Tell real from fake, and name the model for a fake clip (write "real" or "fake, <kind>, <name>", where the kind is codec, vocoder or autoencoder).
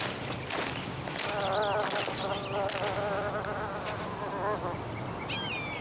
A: real